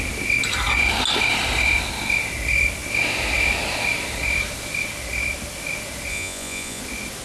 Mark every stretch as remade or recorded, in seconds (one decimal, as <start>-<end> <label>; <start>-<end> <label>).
0.0-6.1 recorded; 6.1-6.8 remade; 6.8-7.2 recorded